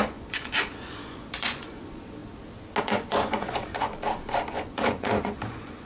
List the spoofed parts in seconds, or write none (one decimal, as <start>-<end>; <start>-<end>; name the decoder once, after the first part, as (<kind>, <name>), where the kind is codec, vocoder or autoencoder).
0.0-2.2 (vocoder, Vocos); 2.8-3.9; 4.5-5.9

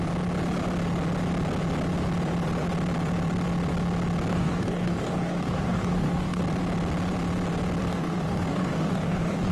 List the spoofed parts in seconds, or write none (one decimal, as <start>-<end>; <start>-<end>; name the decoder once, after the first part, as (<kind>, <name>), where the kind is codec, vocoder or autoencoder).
4.3-6.4 (codec, DAC); 7.8-9.5

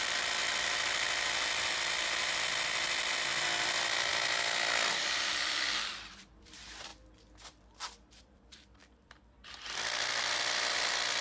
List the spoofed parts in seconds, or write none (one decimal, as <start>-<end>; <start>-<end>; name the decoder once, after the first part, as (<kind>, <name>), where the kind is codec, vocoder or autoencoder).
0.0-4.1 (vocoder, BigVGAN v2); 4.9-6.9; 8.2-11.2

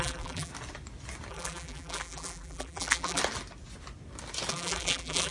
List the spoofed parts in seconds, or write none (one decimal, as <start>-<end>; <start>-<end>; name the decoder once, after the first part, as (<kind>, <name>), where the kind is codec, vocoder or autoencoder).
0.0-0.5 (vocoder, BigVGAN v2); 1.3-3.2; 4.5-5.3

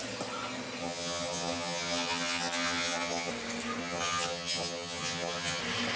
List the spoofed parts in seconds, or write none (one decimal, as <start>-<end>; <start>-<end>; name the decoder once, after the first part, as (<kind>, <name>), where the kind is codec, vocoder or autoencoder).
0.8-3.3 (vocoder, HiFi-GAN); 3.8-5.6

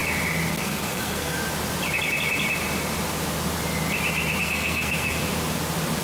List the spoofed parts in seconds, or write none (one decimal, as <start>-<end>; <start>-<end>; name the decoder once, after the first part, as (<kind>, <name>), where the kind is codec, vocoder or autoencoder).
0.5-1.4 (codec, SNAC); 4.4-5.2

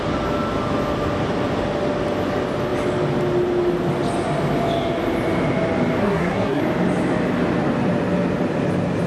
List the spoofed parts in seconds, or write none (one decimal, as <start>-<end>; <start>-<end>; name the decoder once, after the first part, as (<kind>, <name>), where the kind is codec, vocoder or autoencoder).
6.0-6.6 (codec, SNAC)